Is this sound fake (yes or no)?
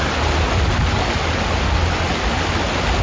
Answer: no